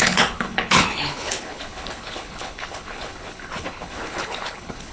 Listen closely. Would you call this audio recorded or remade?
remade